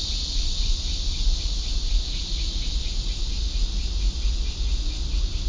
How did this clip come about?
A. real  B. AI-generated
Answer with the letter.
A